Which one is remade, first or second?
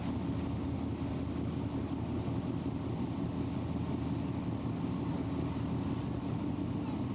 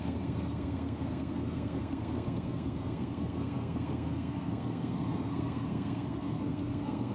second